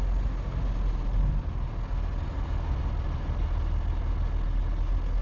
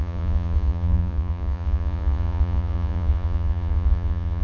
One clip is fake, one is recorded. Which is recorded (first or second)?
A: first